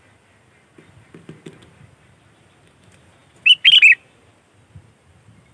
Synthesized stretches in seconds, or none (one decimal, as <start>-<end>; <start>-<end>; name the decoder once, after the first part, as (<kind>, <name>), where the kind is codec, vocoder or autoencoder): none